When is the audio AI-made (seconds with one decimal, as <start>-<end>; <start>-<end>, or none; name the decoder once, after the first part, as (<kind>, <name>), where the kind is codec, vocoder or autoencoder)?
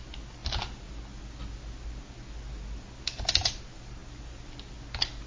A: none